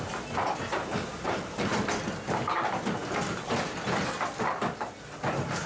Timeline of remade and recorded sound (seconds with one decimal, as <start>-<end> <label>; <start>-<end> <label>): 0.0-5.7 recorded